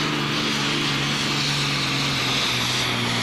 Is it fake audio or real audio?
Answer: real